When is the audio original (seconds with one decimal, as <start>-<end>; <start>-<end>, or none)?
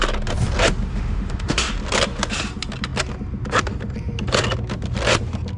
0.0-0.9; 1.7-5.6